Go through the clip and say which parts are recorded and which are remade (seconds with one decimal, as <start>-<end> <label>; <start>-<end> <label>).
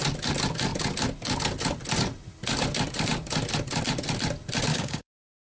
0.0-4.7 recorded; 4.7-5.4 remade